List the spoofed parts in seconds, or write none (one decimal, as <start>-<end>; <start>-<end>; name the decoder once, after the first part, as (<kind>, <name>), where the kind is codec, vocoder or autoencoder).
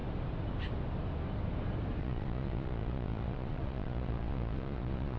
2.0-5.2 (vocoder, Vocos)